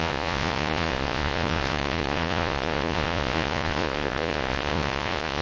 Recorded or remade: remade